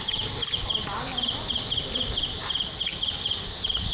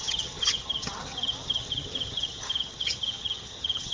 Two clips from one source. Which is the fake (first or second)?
second